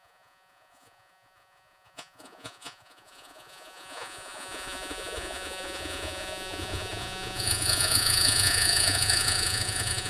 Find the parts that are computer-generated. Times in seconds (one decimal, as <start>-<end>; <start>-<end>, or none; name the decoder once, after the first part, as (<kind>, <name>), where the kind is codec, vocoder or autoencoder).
0.0-10.1 (vocoder, Vocos)